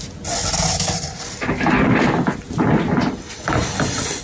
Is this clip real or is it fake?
real